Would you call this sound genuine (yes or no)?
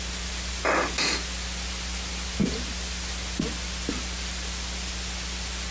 yes